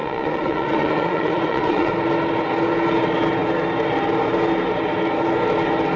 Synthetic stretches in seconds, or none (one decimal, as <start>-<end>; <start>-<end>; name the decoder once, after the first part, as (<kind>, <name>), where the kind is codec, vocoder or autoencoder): 0.0-1.9 (vocoder, Vocos)